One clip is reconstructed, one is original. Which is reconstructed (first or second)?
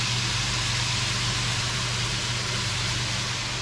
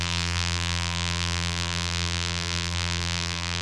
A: second